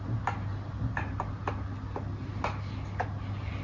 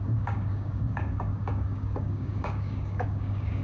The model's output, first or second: second